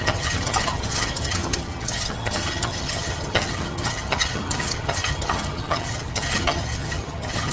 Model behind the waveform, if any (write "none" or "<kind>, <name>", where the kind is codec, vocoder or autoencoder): vocoder, HiFi-GAN